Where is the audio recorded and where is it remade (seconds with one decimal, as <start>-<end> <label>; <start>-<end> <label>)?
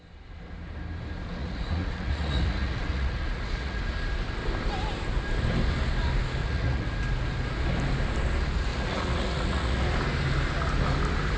0.0-1.4 recorded; 1.4-3.8 remade; 3.8-6.4 recorded; 6.4-6.9 remade; 6.9-8.7 recorded; 8.7-9.8 remade; 9.8-11.4 recorded